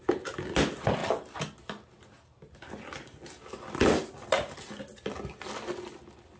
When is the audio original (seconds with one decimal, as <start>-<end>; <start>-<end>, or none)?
0.0-6.4